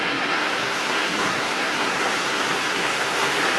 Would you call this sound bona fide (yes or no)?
no